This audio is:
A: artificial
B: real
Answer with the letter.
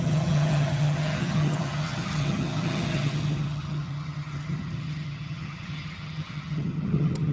A